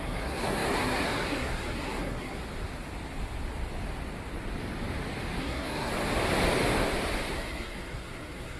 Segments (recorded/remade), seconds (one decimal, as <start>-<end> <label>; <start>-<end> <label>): 0.0-2.4 remade; 2.4-5.4 recorded; 5.4-5.9 remade; 5.9-7.3 recorded; 7.3-8.6 remade